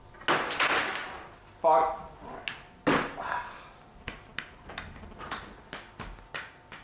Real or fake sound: real